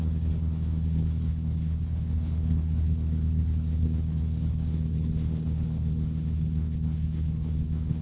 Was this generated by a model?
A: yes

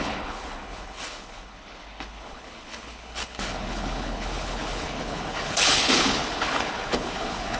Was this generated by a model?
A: yes